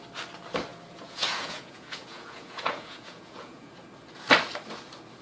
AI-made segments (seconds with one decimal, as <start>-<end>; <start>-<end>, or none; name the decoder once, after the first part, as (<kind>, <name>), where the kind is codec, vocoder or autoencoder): 0.7-3.7 (vocoder, Vocos)